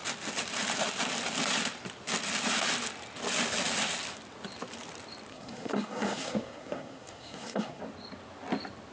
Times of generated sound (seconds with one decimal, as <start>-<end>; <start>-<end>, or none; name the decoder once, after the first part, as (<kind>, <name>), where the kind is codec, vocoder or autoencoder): 5.3-7.8 (codec, SNAC)